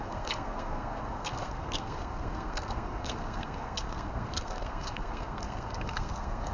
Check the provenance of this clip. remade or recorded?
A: remade